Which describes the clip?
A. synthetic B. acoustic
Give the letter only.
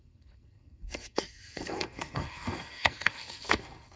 A